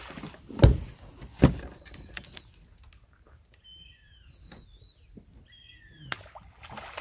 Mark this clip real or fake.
real